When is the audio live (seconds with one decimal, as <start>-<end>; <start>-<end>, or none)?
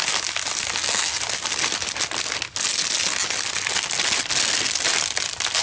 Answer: 0.0-5.6